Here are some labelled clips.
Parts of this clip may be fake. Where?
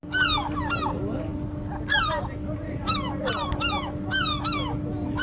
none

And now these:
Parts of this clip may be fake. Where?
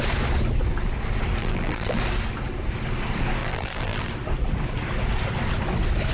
1.4-2.0; 3.4-4.1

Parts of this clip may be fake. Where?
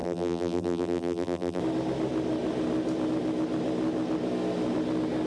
0.0-1.6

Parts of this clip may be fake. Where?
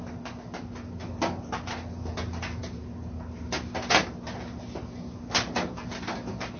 none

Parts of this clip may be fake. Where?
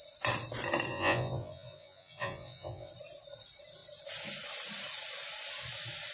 0.9-2.9